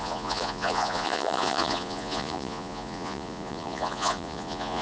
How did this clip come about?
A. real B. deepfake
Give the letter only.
B